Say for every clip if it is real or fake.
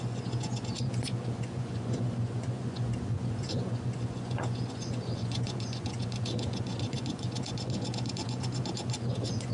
fake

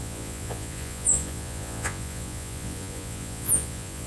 fake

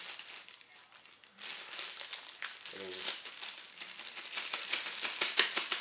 real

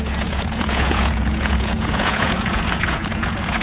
fake